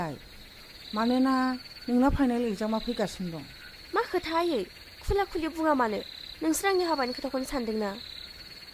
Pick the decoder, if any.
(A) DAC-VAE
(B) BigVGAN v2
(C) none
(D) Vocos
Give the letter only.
C